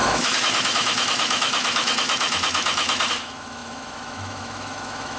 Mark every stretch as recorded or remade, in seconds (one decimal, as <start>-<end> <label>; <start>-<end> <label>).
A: 0.0-5.2 remade